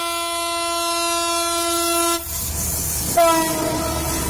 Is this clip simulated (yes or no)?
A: no